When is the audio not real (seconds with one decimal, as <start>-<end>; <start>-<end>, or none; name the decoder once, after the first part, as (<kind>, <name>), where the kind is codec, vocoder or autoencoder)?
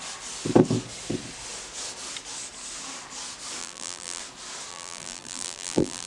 3.6-4.2 (vocoder, BigVGAN v2); 4.7-6.1